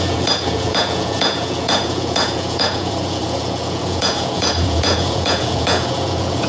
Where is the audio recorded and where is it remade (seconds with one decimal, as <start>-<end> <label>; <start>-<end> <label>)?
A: 0.0-6.5 remade